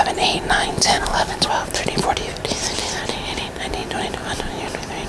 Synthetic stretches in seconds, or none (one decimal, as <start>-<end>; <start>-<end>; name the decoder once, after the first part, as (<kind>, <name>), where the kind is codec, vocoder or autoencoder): 0.7-1.5 (codec, DAC)